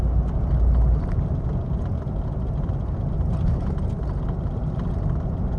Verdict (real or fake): real